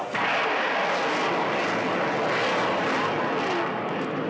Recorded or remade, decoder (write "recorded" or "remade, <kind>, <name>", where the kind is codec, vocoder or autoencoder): recorded